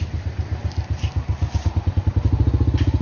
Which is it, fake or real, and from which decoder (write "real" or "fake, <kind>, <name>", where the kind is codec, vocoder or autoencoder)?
real